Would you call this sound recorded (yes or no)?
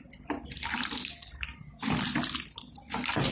yes